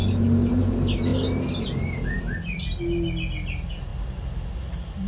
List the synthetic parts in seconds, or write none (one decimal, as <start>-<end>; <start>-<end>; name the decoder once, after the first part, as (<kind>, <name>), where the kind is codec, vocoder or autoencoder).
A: none